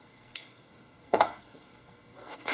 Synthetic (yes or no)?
yes